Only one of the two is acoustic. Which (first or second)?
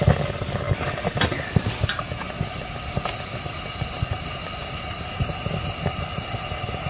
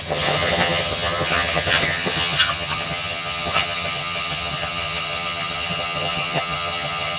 first